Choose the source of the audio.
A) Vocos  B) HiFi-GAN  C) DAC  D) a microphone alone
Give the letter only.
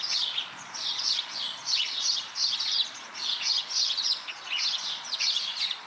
A